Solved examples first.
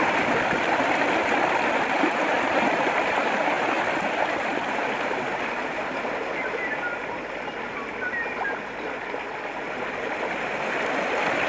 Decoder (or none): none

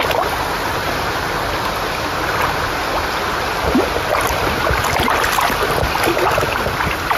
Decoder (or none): vocoder, BigVGAN v2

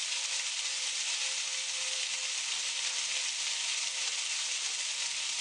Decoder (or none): none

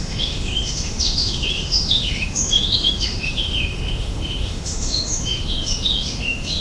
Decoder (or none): autoencoder, DAC-VAE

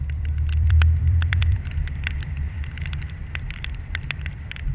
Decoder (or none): vocoder, BigVGAN v2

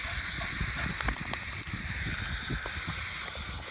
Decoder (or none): none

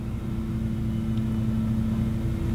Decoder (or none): none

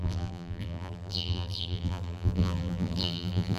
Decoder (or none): vocoder, BigVGAN v2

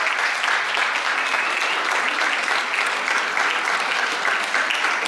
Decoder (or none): none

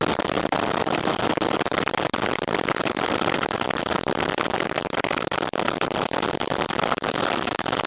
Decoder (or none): none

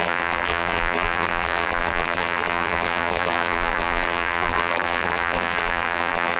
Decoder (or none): vocoder, BigVGAN v2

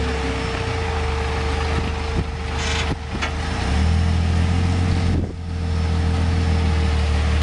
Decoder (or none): none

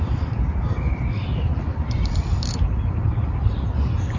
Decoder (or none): none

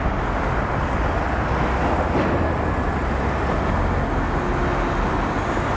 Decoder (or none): none